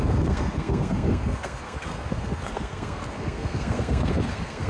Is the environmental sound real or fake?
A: fake